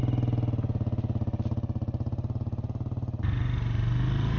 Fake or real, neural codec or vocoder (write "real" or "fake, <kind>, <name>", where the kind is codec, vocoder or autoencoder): real